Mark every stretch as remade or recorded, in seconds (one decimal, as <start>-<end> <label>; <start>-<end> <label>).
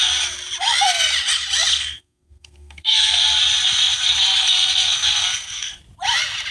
0.0-1.7 recorded; 1.7-3.2 remade; 3.2-4.4 recorded; 4.4-5.8 remade; 5.8-6.5 recorded